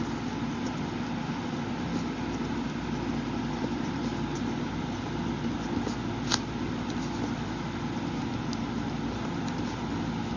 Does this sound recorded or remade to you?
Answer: recorded